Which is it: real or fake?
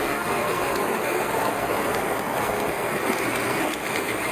fake